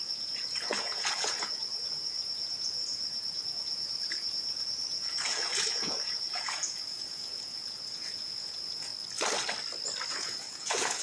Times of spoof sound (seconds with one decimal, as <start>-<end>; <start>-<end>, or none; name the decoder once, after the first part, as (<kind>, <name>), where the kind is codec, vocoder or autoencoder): 0.0-8.9 (vocoder, Vocos); 10.1-11.0